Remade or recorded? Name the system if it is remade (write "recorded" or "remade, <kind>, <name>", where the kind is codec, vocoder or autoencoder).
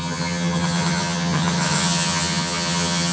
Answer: remade, vocoder, HiFi-GAN